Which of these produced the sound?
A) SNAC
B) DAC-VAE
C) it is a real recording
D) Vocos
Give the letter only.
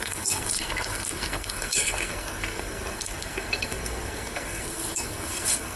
A